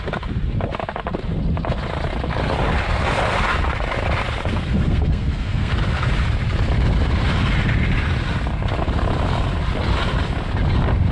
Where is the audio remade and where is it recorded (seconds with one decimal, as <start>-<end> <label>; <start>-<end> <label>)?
0.0-4.5 recorded; 4.5-5.7 remade; 5.7-11.1 recorded